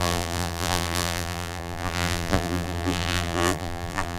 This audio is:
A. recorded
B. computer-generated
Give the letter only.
B